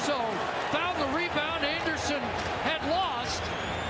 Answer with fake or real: real